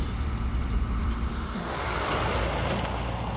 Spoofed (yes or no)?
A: no